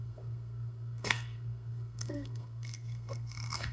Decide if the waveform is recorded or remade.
remade